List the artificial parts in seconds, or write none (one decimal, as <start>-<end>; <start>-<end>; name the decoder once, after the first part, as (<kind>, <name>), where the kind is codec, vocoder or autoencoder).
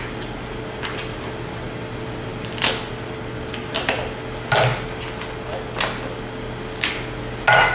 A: none